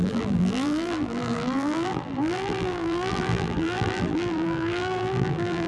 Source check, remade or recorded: remade